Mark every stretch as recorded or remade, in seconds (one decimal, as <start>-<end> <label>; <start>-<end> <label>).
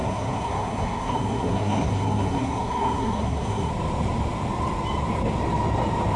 0.0-3.7 remade; 3.7-6.2 recorded